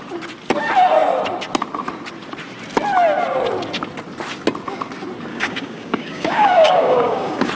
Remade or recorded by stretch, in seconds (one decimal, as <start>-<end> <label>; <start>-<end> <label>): 0.0-5.3 recorded; 5.3-7.5 remade